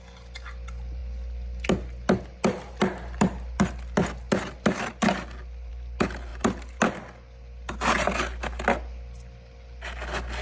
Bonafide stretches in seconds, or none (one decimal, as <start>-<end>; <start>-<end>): 0.0-10.4